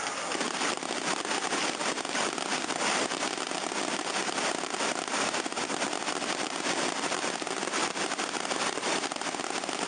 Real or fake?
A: real